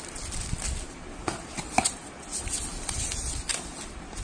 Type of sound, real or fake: real